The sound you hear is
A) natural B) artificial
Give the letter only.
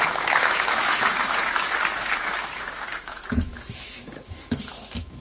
B